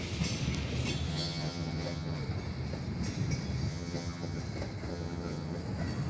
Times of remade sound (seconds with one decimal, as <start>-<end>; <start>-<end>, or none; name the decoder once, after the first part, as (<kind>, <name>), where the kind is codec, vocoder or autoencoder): 1.1-2.2 (vocoder, HiFi-GAN); 3.7-4.4; 4.9-5.6